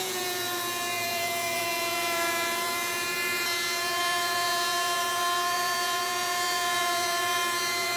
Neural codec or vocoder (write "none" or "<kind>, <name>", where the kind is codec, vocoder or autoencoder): vocoder, Vocos